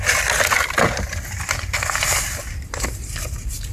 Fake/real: real